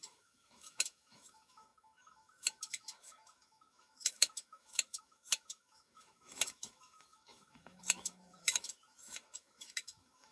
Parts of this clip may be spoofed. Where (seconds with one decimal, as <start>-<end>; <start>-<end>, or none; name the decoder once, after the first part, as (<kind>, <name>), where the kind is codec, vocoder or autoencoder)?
0.0-10.3 (autoencoder, DAC-VAE)